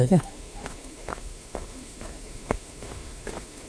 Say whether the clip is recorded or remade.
remade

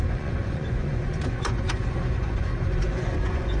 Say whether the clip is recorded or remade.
remade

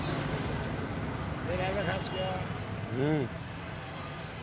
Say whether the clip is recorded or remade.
recorded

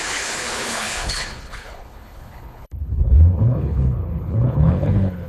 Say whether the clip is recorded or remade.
remade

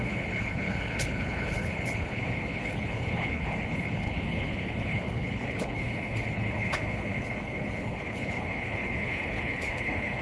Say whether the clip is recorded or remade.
remade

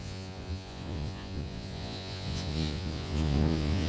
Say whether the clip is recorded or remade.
remade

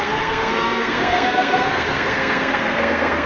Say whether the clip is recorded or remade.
remade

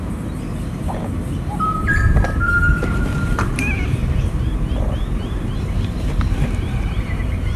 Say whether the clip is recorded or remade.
remade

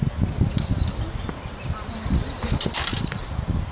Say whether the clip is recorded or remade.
recorded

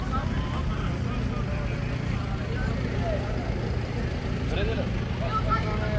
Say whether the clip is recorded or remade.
recorded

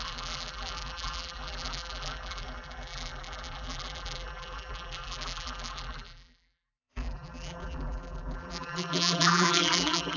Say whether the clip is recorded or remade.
remade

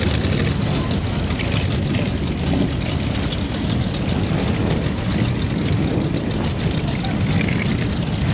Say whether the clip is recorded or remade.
recorded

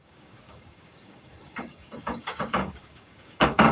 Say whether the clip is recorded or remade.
remade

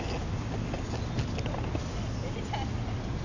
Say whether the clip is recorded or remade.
recorded